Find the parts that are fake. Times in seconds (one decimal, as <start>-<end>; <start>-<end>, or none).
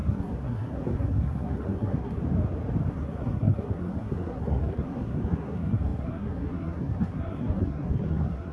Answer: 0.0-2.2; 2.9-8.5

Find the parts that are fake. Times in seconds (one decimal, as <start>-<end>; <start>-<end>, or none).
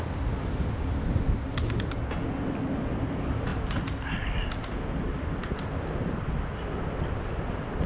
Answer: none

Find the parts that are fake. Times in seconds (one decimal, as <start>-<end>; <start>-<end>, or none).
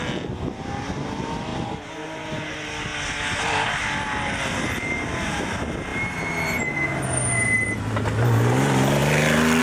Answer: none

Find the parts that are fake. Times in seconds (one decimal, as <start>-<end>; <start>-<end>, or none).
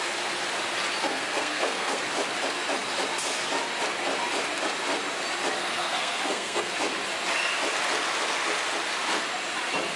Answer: 1.0-2.0; 5.6-6.7